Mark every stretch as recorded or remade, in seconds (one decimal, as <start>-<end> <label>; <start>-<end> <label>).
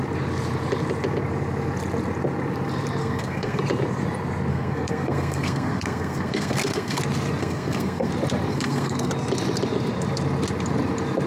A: 0.0-3.0 recorded; 3.0-3.6 remade; 3.6-4.5 recorded; 4.5-7.0 remade; 7.0-7.4 recorded; 7.4-8.1 remade; 8.1-8.5 recorded; 8.5-9.1 remade; 9.1-11.3 recorded